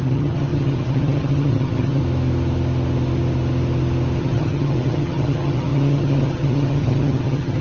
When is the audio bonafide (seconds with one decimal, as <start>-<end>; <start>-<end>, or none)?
2.0-4.2